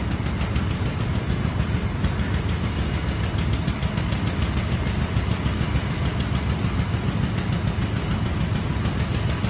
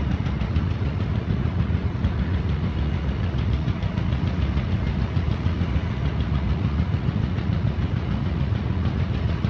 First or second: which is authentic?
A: first